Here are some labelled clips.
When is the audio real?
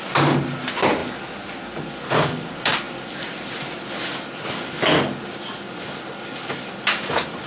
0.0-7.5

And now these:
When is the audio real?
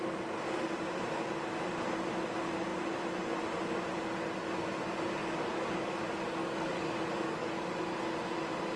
0.0-5.2; 6.0-6.4; 7.8-8.8